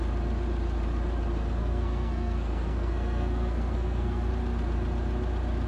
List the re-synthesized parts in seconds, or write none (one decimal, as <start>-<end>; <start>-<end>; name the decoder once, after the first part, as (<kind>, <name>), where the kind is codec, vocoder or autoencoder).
1.6-4.3 (codec, SNAC)